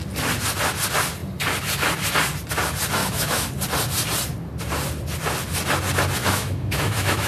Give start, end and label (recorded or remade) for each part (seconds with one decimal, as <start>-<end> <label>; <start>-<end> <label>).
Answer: 0.0-3.0 recorded; 3.0-3.5 remade; 3.5-6.2 recorded; 6.2-7.3 remade